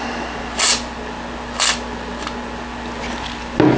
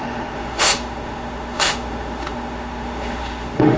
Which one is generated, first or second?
second